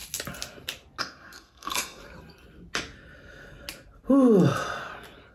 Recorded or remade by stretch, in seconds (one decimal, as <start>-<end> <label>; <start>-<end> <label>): 0.0-1.0 recorded; 1.0-2.0 remade; 2.0-5.3 recorded